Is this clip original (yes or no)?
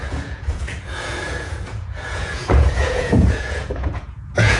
no